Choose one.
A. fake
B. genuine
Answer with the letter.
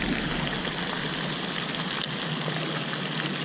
B